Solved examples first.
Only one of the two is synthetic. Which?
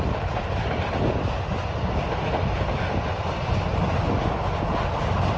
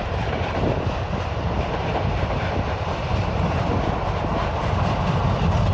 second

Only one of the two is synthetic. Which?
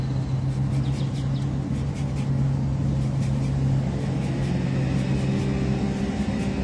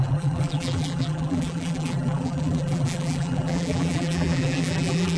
second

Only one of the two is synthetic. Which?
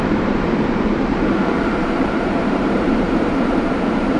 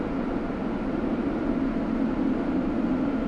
first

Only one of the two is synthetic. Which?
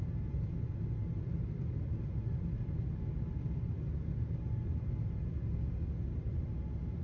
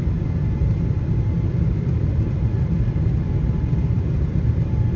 second